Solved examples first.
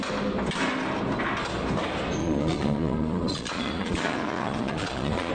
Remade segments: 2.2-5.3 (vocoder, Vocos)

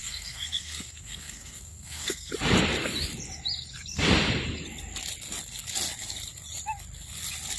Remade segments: 0.0-2.3 (codec, SNAC)

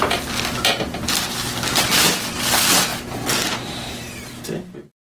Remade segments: 1.5-2.4 (vocoder, BigVGAN v2)